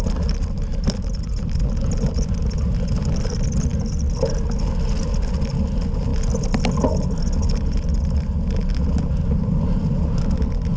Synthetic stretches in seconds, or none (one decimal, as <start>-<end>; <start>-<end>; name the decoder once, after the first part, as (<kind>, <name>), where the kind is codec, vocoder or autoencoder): none